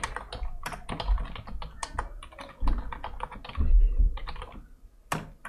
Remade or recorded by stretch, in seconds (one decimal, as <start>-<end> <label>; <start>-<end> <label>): 0.0-5.5 recorded